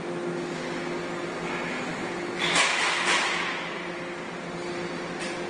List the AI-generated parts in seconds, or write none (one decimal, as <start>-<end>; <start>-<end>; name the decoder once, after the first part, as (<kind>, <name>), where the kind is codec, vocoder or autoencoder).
none